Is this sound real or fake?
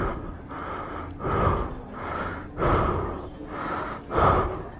real